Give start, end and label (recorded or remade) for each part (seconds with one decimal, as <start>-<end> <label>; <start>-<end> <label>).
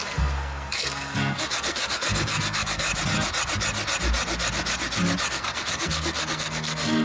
0.0-2.9 remade; 2.9-5.3 recorded; 5.3-7.0 remade